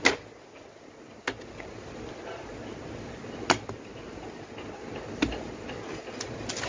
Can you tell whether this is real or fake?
real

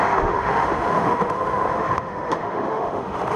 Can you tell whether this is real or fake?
fake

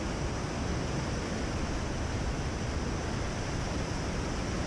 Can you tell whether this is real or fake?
real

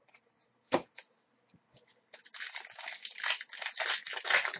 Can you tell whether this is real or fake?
real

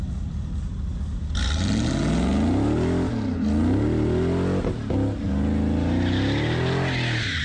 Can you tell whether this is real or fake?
real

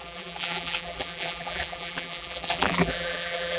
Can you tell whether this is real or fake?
fake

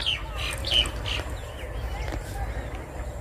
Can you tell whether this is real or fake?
real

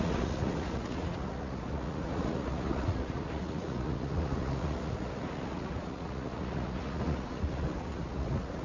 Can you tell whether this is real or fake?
fake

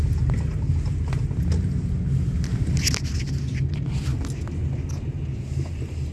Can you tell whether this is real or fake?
real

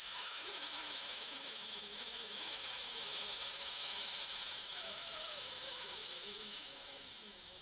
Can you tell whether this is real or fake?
fake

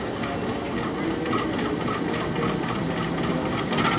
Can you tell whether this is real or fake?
real